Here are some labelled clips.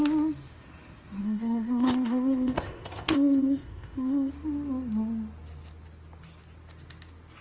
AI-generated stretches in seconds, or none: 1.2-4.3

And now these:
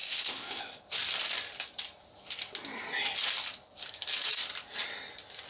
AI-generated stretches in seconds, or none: 0.0-0.8

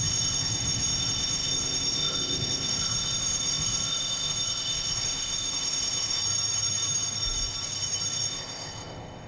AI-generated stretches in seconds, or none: 0.0-6.2; 8.3-9.3

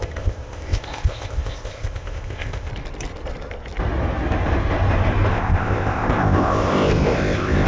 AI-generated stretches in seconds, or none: 0.0-2.7; 5.3-7.7

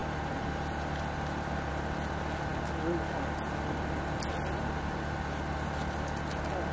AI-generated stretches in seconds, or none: none

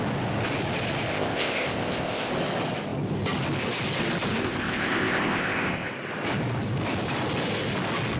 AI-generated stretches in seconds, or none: 1.1-2.3; 4.4-5.9

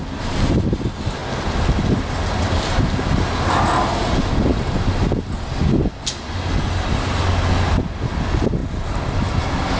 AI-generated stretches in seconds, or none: none